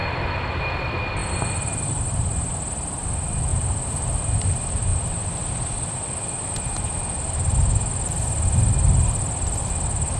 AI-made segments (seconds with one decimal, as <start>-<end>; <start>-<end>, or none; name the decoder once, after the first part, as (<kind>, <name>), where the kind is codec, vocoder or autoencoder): none